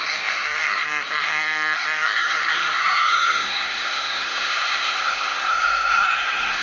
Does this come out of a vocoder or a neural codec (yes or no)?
yes